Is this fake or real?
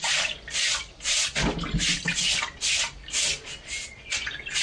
real